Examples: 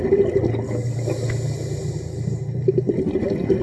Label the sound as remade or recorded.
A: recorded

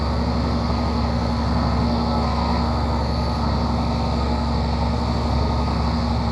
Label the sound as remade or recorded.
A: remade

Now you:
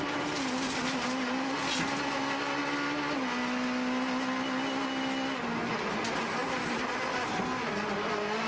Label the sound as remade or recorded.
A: recorded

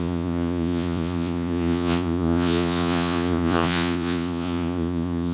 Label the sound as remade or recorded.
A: remade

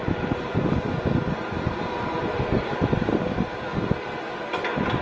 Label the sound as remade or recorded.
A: recorded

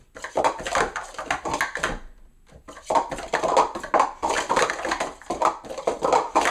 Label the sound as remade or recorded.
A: recorded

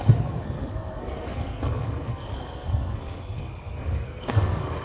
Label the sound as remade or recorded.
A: remade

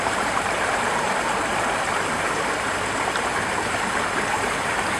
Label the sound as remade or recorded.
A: remade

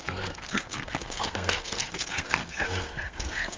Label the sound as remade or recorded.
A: remade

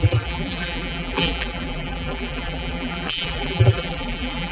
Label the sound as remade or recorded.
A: remade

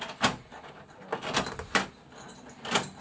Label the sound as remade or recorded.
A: recorded